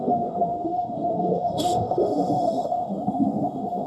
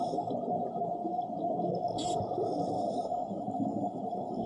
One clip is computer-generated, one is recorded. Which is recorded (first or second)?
second